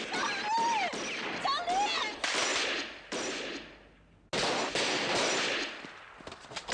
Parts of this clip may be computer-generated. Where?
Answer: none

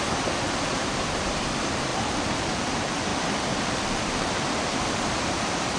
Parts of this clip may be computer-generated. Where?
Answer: 0.0-0.9; 1.4-5.8

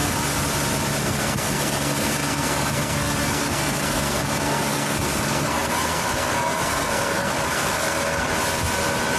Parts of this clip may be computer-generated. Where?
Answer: 1.0-8.3

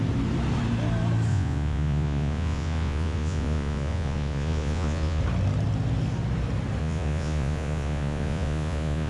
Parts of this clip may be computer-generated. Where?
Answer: 1.3-5.2; 6.8-9.1

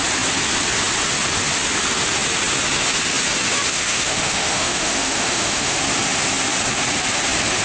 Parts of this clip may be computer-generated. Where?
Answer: 3.7-5.8

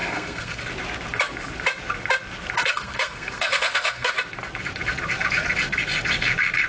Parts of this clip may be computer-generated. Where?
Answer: 0.0-0.6; 2.6-4.1

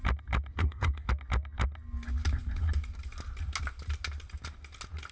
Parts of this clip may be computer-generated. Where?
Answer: 0.5-1.1